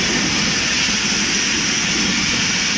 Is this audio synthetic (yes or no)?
no